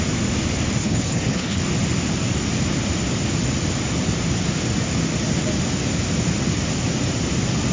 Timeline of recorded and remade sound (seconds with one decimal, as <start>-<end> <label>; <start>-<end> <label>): 0.0-0.8 recorded; 0.8-1.6 remade; 1.6-7.7 recorded